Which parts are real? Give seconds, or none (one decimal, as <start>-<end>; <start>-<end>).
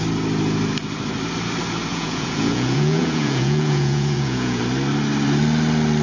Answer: 0.0-1.9; 4.6-6.0